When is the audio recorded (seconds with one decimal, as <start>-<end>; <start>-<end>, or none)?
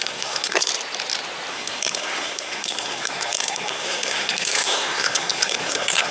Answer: 0.7-1.5